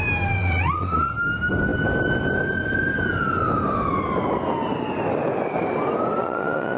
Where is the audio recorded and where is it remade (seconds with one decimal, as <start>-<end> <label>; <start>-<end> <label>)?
0.0-0.4 recorded; 0.4-1.1 remade; 1.1-6.2 recorded; 6.2-6.8 remade